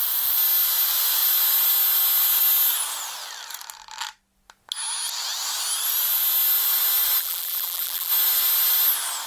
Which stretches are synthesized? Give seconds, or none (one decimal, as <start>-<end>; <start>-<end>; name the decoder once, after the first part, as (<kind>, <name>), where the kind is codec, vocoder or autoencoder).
7.2-8.1 (vocoder, BigVGAN v2)